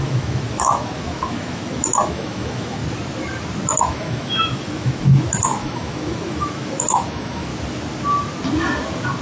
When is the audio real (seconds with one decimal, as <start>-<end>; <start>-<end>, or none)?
2.8-3.8; 7.5-9.2